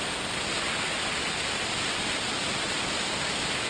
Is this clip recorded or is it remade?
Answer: recorded